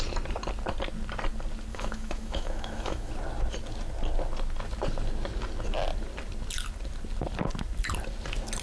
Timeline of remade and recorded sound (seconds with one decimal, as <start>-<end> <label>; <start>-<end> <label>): 0.0-1.7 recorded; 1.7-3.1 remade; 3.1-8.6 recorded